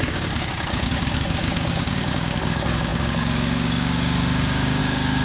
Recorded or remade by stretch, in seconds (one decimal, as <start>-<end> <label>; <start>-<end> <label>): 0.0-5.2 remade